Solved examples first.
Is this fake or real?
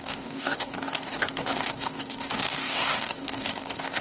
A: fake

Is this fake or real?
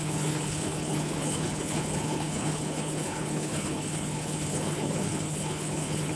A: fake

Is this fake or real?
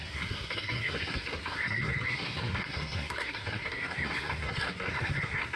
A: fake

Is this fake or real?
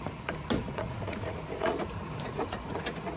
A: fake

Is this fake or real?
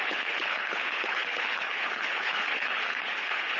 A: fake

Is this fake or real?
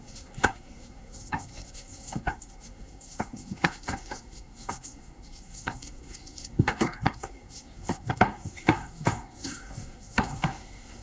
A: fake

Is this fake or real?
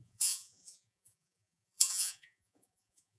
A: fake